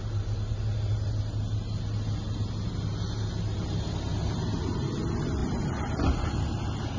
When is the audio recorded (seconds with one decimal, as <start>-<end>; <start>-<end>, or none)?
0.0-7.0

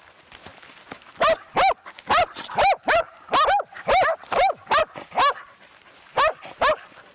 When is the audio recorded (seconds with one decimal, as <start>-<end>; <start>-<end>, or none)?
0.0-7.1

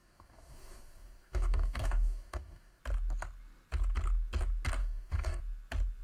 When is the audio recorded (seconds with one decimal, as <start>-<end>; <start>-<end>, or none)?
2.8-4.8; 5.4-6.0